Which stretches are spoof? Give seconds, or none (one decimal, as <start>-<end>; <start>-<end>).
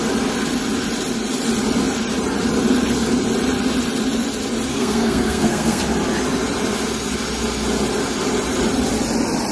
4.7-5.8